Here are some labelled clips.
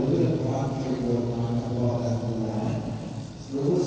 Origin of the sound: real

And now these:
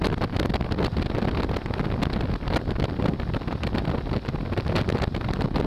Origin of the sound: real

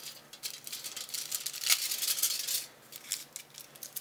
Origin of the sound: real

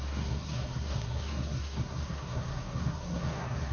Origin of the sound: fake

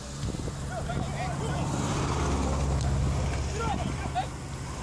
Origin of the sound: real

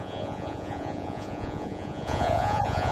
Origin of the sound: fake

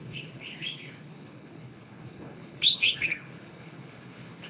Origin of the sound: fake